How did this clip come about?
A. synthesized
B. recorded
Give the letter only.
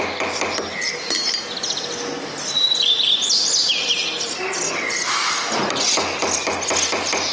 B